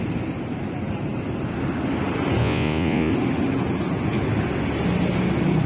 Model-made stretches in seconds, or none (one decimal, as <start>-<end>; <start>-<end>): 2.4-3.1